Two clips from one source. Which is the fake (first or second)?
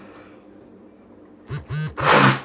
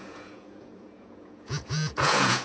second